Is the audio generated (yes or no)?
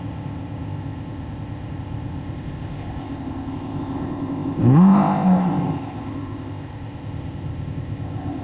yes